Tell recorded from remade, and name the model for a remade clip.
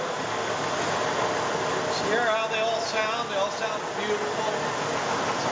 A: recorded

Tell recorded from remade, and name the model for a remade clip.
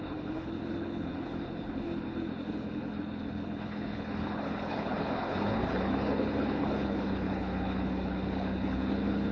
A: remade, codec, HILCodec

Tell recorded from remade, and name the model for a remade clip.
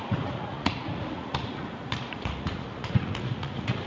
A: remade, vocoder, Vocos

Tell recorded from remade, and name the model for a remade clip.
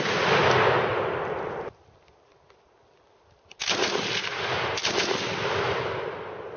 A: recorded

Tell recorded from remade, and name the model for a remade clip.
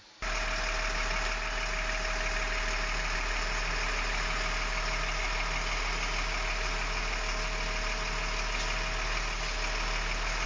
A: recorded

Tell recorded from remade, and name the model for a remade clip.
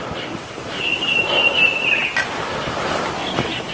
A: remade, vocoder, BigVGAN v2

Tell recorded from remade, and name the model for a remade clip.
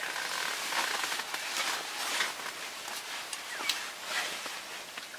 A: recorded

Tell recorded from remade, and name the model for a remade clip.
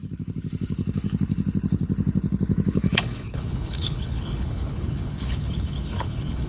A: remade, codec, HILCodec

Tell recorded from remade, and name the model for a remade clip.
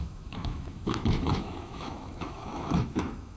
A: remade, autoencoder, DAC-VAE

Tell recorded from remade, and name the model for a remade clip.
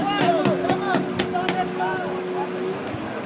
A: recorded